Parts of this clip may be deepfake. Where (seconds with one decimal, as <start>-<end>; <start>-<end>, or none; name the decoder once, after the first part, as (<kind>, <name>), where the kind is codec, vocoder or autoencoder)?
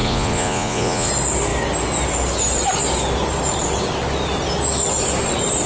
0.0-1.1 (vocoder, Vocos)